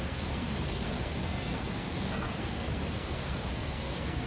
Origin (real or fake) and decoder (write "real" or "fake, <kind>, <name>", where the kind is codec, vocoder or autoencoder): fake, codec, SNAC